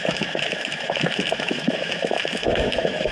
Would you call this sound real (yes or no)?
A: no